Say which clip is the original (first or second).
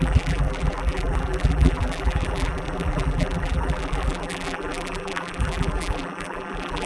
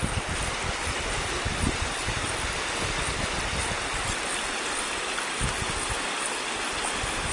second